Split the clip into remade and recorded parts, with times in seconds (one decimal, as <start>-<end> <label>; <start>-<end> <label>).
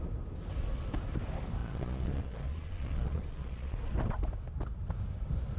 0.0-1.6 recorded; 1.6-3.8 remade; 3.8-5.6 recorded